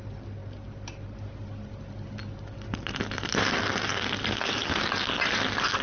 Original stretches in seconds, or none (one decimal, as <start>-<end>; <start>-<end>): 0.0-5.8